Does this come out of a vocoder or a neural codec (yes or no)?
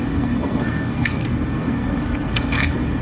yes